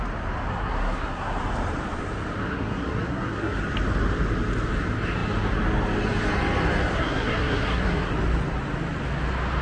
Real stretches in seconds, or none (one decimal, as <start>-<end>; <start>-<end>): 0.0-0.5; 1.4-2.4; 3.6-6.9; 8.1-9.6